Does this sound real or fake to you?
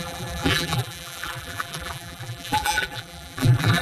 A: fake